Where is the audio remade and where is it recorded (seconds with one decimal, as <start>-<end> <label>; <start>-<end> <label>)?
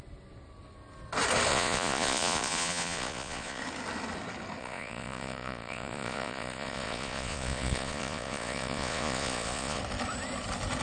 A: 0.0-1.5 recorded; 1.5-3.6 remade; 3.6-4.6 recorded; 4.6-9.8 remade; 9.8-10.8 recorded